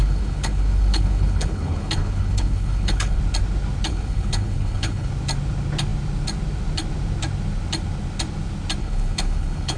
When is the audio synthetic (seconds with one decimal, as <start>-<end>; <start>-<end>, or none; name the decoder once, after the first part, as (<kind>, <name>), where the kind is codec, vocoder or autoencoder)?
0.0-3.2 (codec, HILCodec); 3.9-5.1; 8.8-9.8